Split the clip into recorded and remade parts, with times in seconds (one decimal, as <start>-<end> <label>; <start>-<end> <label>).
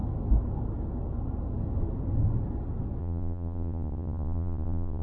0.0-3.0 recorded; 3.0-5.0 remade